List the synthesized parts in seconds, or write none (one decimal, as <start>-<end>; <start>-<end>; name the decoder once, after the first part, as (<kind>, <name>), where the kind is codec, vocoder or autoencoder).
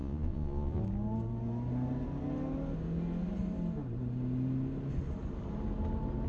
0.0-0.8 (vocoder, Vocos)